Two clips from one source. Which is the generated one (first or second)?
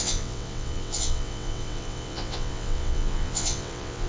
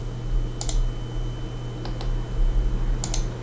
first